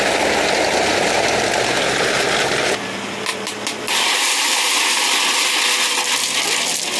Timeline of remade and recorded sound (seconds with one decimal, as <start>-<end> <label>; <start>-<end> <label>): 0.0-7.0 remade